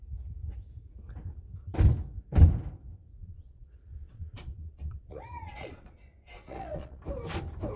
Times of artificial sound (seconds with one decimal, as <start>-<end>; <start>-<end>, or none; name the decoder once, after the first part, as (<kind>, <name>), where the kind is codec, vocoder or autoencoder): 3.2-7.0 (vocoder, Vocos)